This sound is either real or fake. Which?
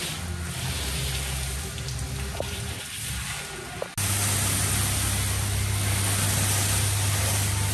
real